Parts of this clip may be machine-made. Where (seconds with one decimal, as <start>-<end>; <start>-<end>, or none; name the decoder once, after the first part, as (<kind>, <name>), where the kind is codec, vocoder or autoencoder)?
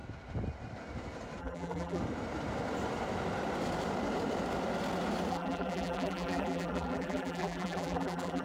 1.4-2.0 (vocoder, BigVGAN v2); 5.3-8.4